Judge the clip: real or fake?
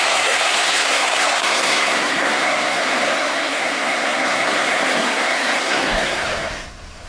fake